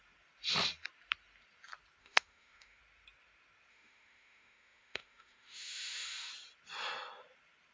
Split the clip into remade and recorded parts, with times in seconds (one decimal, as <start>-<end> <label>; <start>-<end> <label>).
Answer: 0.0-2.0 recorded; 2.0-2.8 remade; 2.8-3.7 recorded; 3.7-6.3 remade; 6.3-7.7 recorded